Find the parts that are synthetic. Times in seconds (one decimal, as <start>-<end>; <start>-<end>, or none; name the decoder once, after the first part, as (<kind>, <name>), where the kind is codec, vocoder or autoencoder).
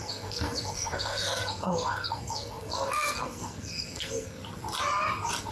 0.0-4.4 (codec, SNAC)